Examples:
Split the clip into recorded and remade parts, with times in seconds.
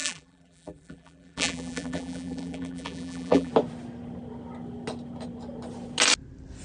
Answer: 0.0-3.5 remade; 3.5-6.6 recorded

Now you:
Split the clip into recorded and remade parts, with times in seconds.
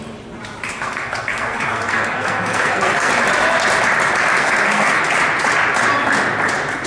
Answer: 0.0-0.7 recorded; 0.7-3.1 remade; 3.1-4.3 recorded; 4.3-5.0 remade; 5.0-6.9 recorded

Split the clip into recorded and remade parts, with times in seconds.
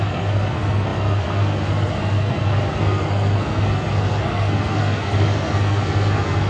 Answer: 0.0-6.5 remade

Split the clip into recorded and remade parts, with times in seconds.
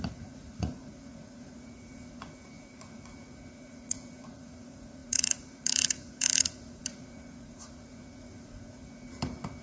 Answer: 0.0-9.6 remade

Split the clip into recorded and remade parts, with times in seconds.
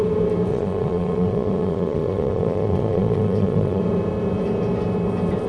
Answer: 0.0-0.5 recorded; 0.5-3.8 remade; 3.8-5.5 recorded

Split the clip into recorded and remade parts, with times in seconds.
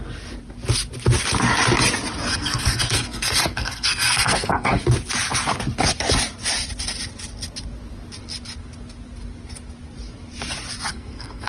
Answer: 0.0-2.3 recorded; 2.3-4.8 remade; 4.8-10.9 recorded; 10.9-11.5 remade